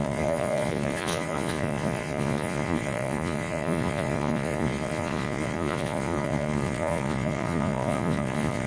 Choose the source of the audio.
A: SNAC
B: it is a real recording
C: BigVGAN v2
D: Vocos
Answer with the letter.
D